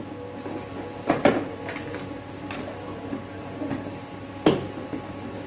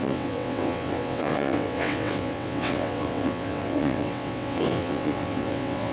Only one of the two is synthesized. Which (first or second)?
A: second